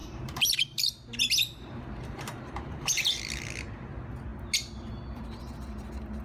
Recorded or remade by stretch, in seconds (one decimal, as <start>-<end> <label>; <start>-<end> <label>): 0.0-3.2 remade; 3.2-6.2 recorded